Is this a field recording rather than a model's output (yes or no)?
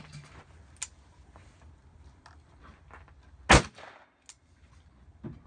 yes